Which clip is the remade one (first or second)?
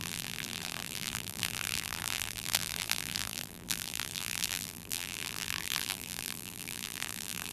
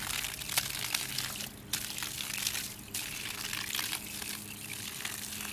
first